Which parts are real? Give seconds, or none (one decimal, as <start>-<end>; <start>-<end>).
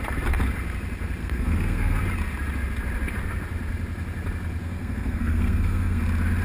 0.0-1.2; 2.0-4.6; 6.0-6.4